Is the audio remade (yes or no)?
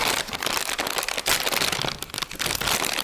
no